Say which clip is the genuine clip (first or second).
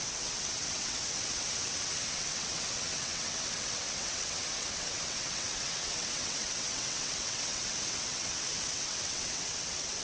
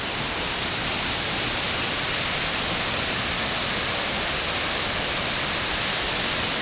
second